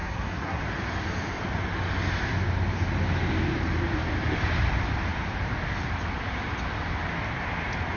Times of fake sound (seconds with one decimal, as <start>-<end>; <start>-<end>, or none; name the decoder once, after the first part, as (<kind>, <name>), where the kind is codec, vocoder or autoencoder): 0.0-0.6 (codec, SNAC)